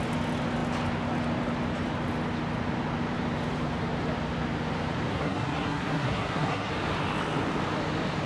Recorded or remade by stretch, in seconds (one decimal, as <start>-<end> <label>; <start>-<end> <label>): 0.0-5.1 recorded; 5.1-6.7 remade; 6.7-8.3 recorded